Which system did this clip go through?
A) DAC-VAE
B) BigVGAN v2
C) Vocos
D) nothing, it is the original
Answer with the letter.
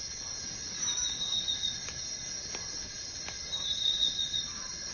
D